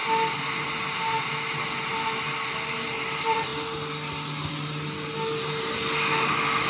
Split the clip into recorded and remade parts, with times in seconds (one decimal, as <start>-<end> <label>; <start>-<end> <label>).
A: 0.0-6.7 recorded